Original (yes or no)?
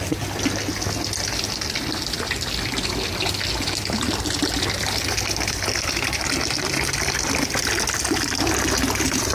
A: yes